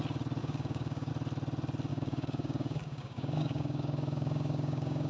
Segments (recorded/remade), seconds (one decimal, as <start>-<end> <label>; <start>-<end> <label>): 0.0-0.4 recorded; 0.4-1.1 remade; 1.1-1.9 recorded; 1.9-5.1 remade